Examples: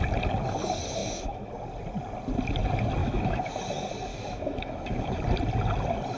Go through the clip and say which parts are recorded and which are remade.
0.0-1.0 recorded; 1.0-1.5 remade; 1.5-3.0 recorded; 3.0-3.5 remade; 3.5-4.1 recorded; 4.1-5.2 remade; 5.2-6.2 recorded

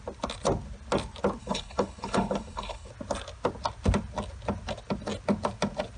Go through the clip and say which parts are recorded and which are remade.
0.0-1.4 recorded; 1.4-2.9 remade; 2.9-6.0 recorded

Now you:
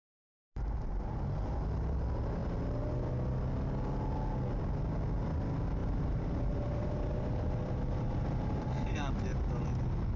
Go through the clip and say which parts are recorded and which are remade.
0.0-5.8 recorded; 5.8-9.1 remade; 9.1-10.2 recorded

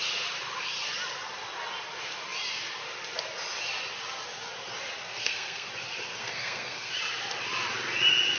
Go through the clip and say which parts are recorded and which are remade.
0.0-5.0 recorded; 5.0-5.7 remade; 5.7-6.2 recorded; 6.2-6.9 remade; 6.9-8.4 recorded